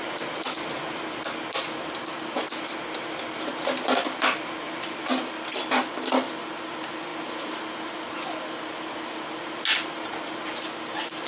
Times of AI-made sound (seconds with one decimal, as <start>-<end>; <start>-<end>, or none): none